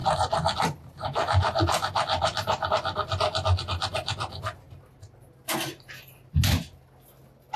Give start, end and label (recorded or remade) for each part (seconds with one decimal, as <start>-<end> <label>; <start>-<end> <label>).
0.0-2.7 remade; 2.7-7.6 recorded